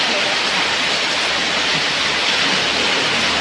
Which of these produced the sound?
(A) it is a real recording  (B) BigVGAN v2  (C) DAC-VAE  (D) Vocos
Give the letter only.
A